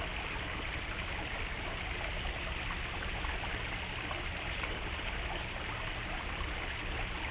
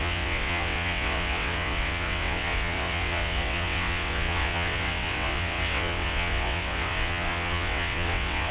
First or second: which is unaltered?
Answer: first